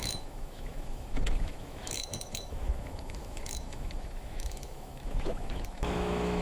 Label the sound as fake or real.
fake